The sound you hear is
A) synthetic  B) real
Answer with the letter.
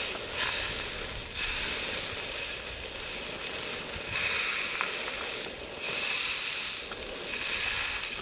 B